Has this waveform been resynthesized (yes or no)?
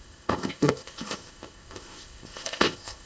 yes